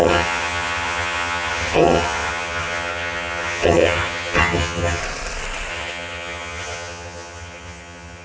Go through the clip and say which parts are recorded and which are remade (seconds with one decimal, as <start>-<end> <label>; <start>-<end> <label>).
0.0-5.0 remade; 5.0-5.7 recorded; 5.7-8.2 remade